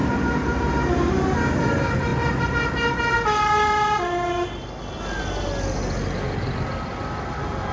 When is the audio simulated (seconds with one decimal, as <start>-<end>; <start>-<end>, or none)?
none